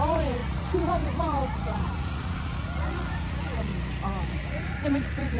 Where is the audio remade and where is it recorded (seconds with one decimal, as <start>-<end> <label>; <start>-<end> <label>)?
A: 0.0-3.7 remade; 3.7-4.2 recorded; 4.2-5.4 remade